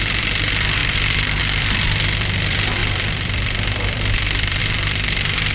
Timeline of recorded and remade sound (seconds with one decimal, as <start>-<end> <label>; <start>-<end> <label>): 0.0-5.5 remade